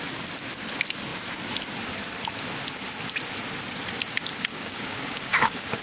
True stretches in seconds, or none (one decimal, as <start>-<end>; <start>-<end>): 0.0-4.5